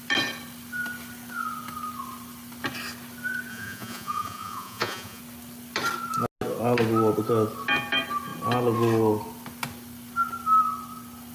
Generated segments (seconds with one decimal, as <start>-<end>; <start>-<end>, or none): 3.5-5.2